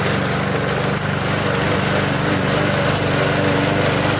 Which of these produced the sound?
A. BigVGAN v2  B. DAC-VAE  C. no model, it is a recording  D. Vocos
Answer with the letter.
C